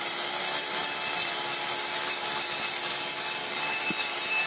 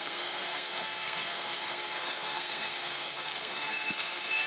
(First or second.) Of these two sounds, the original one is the first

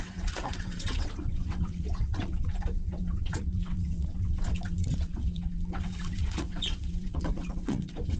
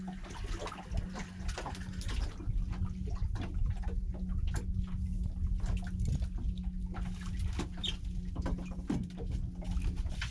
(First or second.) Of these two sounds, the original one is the second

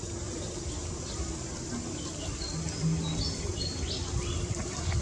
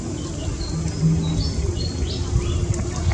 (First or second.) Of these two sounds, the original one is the second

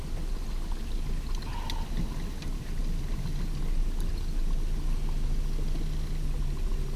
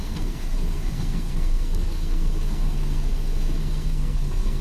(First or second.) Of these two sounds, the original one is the first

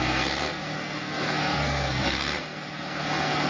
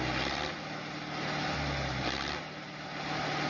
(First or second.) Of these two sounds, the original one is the second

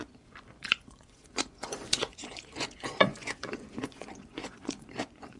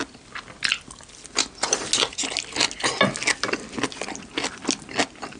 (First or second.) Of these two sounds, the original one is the second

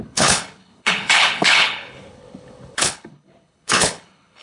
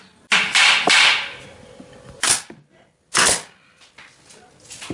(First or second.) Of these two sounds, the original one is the second